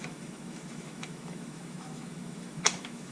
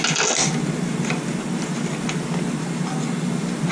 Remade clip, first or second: first